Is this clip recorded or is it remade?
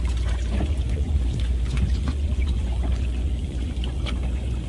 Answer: remade